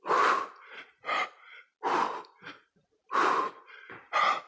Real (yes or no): yes